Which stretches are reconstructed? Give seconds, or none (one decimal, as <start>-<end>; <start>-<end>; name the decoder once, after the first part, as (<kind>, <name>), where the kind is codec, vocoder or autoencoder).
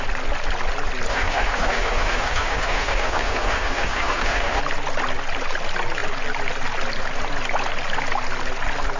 1.1-4.6 (codec, DAC)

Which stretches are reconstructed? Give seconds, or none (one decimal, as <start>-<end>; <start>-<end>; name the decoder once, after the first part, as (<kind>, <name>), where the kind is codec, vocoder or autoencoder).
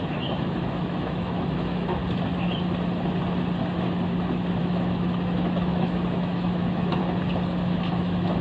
0.0-2.0 (autoencoder, DAC-VAE); 4.6-7.0; 7.9-8.4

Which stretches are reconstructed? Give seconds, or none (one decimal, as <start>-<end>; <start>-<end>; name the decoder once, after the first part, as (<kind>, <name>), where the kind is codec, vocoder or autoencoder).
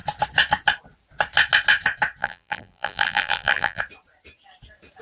2.2-3.8 (vocoder, BigVGAN v2)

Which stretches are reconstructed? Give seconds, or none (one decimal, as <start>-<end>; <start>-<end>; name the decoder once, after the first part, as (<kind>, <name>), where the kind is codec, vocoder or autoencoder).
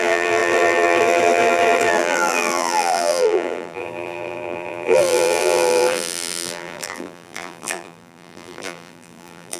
0.0-9.6 (vocoder, BigVGAN v2)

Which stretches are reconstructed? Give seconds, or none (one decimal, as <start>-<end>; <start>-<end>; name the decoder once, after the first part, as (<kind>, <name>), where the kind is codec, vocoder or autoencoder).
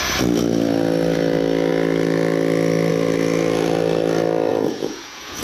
4.5-5.4 (vocoder, Vocos)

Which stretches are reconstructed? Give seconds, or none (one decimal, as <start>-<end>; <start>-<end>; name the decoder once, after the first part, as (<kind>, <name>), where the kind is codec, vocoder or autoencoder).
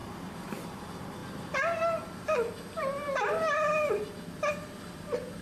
0.0-0.6 (vocoder, BigVGAN v2)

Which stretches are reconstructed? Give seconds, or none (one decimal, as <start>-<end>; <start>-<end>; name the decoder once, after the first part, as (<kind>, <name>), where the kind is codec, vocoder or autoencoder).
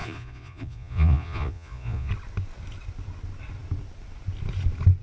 0.0-2.1 (vocoder, Vocos)